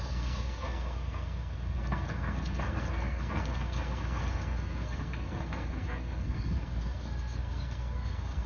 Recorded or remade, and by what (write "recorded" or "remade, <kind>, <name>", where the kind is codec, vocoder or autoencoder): remade, codec, SNAC